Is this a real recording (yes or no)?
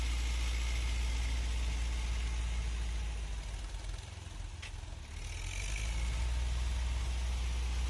yes